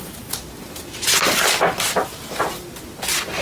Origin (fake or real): real